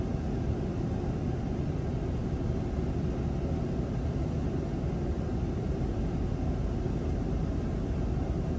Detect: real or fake real